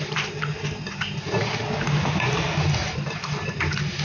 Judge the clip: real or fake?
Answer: real